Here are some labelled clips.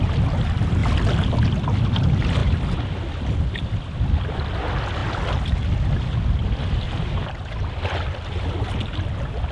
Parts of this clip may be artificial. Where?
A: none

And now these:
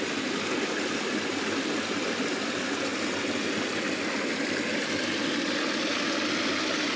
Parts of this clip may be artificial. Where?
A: none

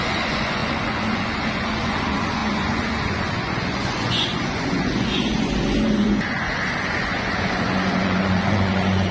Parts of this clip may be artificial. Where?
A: 0.0-9.1 (vocoder, Vocos)

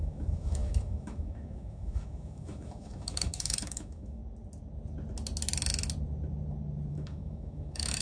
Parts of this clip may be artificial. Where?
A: 0.0-4.2 (autoencoder, DAC-VAE); 6.9-8.0

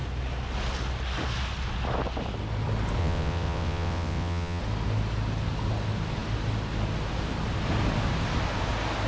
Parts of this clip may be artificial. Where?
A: 3.0-4.6 (vocoder, WaveNeXt)